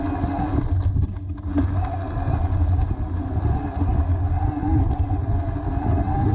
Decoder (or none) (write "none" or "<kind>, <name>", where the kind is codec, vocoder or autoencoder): none